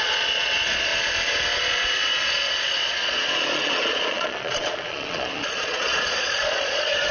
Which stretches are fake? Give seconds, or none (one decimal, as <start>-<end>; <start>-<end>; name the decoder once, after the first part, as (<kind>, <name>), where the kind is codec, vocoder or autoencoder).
0.0-0.9 (vocoder, Vocos); 1.6-7.1